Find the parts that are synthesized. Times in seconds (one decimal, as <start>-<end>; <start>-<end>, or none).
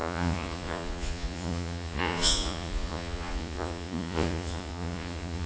0.0-5.5